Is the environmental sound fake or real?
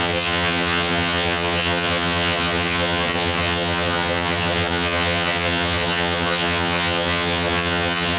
fake